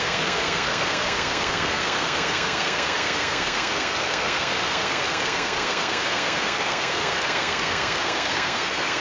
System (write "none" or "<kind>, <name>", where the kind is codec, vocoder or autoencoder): codec, SNAC